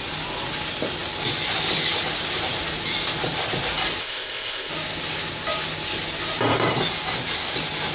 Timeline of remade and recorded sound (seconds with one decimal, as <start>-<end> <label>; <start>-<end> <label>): 0.0-4.0 recorded; 4.0-4.7 remade; 4.7-7.9 recorded